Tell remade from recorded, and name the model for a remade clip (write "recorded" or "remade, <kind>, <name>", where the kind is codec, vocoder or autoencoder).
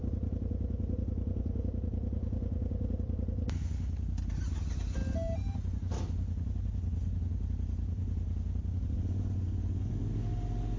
recorded